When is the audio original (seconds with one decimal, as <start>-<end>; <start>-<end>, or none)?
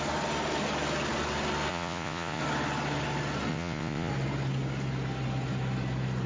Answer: 0.0-1.7; 2.4-3.5; 4.1-6.3